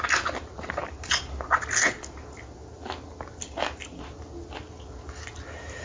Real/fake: real